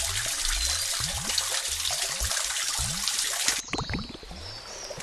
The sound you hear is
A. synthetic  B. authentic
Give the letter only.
B